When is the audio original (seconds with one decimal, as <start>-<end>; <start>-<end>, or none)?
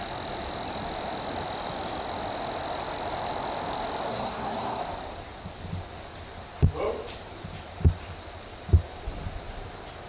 0.0-4.1; 4.8-10.1